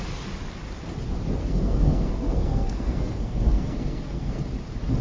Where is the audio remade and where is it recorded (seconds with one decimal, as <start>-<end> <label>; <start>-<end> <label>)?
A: 0.0-1.4 recorded; 1.4-4.4 remade; 4.4-5.0 recorded

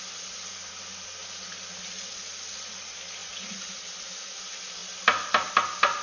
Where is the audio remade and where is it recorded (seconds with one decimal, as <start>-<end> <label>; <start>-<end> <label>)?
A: 0.0-4.8 recorded; 4.8-5.5 remade; 5.5-6.0 recorded